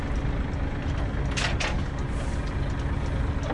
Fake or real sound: real